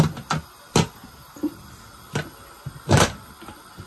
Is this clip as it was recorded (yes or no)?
yes